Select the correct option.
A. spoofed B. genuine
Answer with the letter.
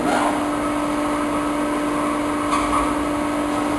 B